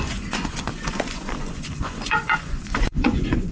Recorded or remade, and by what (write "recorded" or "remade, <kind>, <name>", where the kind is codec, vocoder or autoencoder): remade, vocoder, Vocos